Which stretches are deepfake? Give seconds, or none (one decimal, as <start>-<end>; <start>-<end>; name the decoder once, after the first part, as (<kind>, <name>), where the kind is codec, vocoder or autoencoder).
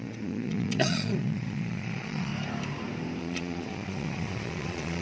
0.0-2.3 (vocoder, Vocos); 3.2-5.0